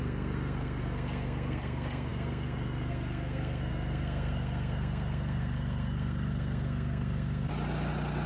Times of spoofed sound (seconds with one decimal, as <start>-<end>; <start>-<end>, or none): 0.0-7.5